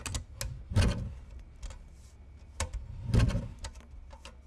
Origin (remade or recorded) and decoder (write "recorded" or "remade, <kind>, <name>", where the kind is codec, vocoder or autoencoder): recorded